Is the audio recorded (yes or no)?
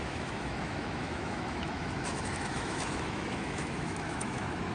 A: no